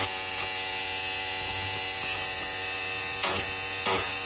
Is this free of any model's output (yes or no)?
no